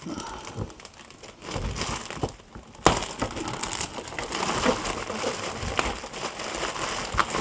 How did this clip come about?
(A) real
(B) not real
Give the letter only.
A